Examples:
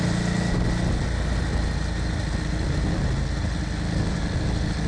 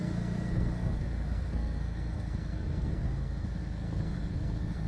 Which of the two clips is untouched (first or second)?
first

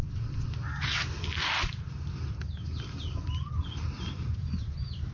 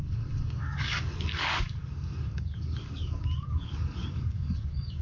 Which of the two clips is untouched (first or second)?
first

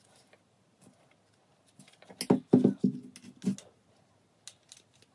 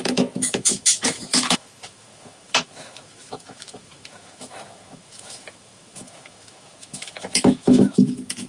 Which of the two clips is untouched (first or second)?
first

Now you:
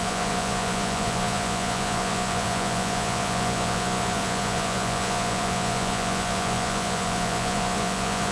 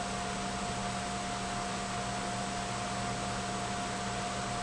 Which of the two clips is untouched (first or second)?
second